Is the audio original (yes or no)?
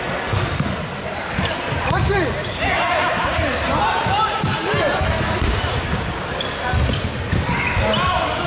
yes